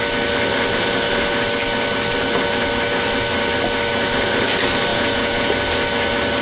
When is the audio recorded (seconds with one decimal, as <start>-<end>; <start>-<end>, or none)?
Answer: 0.0-4.9; 5.5-6.4